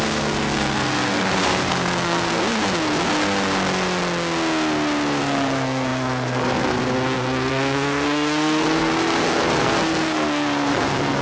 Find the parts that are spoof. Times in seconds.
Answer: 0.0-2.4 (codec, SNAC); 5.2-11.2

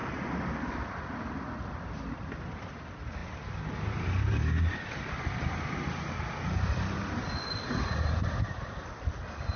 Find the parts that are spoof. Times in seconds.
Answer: none

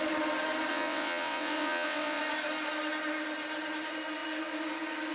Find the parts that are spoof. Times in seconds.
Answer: 0.7-2.2 (vocoder, WaveNeXt)

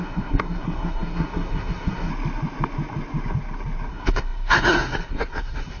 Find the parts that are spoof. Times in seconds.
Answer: 0.0-2.1 (codec, SNAC); 3.9-5.8